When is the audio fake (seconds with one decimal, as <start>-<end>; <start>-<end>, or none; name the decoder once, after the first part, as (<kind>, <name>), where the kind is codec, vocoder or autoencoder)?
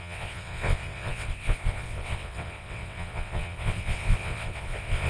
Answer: 0.0-5.1 (vocoder, WaveNeXt)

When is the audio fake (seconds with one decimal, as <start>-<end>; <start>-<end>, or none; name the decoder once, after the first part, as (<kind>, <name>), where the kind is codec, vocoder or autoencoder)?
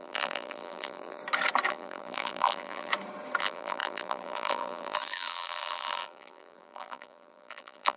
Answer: 0.0-1.2 (vocoder, BigVGAN v2); 1.7-2.9; 3.4-8.0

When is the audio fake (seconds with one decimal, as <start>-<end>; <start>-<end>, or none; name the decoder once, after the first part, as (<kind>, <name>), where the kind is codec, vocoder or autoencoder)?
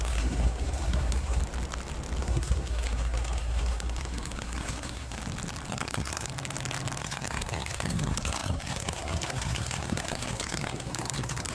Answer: 0.0-1.4 (codec, SNAC); 2.2-5.2; 5.7-6.3; 7.0-11.5